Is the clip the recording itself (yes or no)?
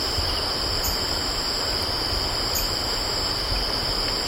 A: yes